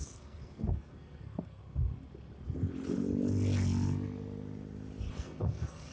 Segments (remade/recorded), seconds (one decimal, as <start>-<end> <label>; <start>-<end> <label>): 0.0-1.6 remade; 1.6-5.1 recorded; 5.1-5.9 remade